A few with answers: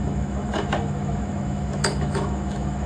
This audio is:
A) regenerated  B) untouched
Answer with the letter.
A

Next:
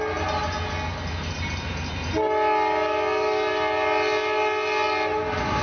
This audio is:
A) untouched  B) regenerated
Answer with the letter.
A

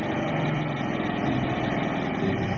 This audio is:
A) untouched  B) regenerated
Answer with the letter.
A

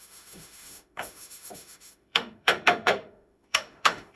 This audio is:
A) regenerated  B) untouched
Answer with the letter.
A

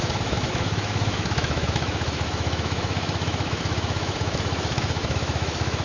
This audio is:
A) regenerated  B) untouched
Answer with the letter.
A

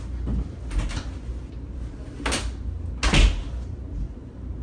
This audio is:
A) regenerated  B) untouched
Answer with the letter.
B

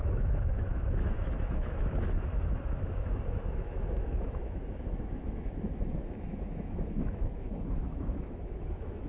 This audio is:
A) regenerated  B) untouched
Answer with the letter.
A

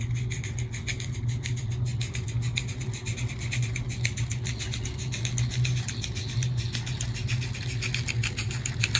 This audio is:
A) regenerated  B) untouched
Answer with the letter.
B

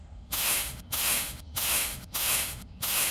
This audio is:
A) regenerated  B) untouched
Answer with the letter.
A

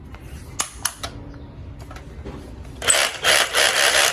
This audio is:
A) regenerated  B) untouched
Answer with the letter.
B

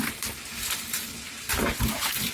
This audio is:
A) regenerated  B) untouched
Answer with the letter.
B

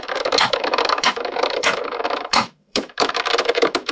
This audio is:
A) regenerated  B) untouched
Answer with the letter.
A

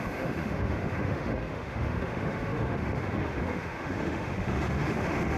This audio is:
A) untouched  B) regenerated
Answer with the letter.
B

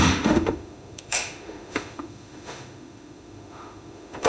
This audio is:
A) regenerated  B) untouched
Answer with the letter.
A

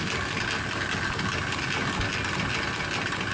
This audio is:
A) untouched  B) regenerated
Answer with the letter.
A